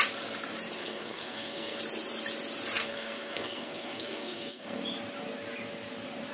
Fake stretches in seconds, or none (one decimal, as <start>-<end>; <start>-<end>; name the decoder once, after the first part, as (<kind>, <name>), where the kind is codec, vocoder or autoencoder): 0.8-1.8 (codec, SNAC); 2.8-4.8